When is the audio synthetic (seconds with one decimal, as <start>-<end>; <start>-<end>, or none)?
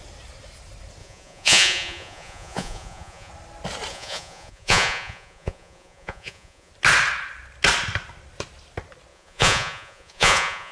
1.0-3.3; 3.9-6.7; 9.1-10.7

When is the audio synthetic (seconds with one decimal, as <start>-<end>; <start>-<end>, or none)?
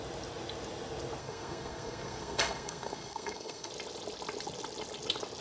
1.2-3.7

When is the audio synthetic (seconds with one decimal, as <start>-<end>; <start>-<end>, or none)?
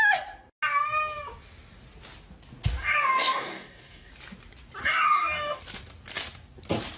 2.8-4.1; 4.8-5.6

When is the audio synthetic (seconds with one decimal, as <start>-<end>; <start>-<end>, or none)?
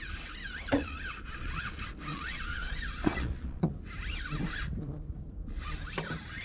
0.7-1.7; 2.1-3.7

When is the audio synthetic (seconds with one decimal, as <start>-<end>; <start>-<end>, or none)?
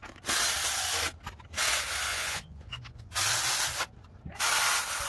2.1-3.1